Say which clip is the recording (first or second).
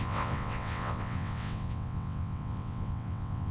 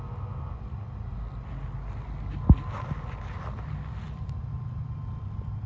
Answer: second